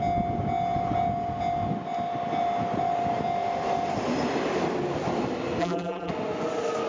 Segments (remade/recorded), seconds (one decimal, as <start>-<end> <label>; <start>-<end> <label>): 0.0-5.6 recorded; 5.6-6.1 remade; 6.1-6.9 recorded